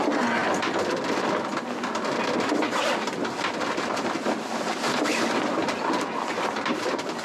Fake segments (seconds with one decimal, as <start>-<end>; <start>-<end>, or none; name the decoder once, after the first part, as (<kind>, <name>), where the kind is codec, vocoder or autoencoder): none